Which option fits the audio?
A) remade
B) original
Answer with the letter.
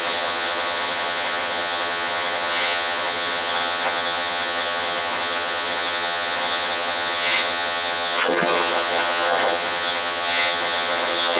A